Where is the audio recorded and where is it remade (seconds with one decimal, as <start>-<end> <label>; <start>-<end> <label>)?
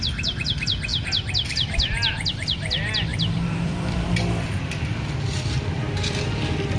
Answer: 0.0-3.1 recorded; 3.1-4.1 remade; 4.1-4.9 recorded; 4.9-5.7 remade; 5.7-6.8 recorded